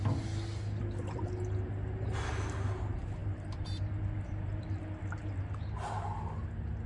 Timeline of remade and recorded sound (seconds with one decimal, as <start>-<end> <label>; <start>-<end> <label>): 0.0-0.8 recorded; 0.8-1.5 remade; 1.5-3.2 recorded; 3.2-5.1 remade; 5.1-6.9 recorded